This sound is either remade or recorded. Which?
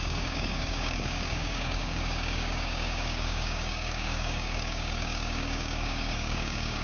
remade